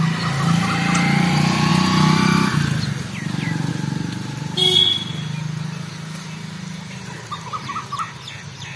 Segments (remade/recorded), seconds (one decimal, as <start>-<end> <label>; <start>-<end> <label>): 0.0-8.8 recorded